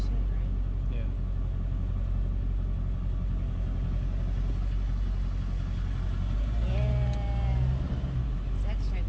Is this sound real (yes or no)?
yes